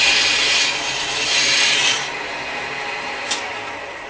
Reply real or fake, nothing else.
real